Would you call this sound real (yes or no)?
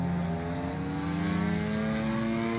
yes